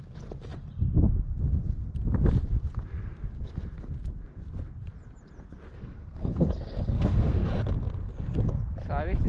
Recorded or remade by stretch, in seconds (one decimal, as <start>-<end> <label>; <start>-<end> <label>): 0.0-5.7 recorded; 5.7-7.5 remade; 7.5-8.0 recorded; 8.0-8.6 remade; 8.6-9.3 recorded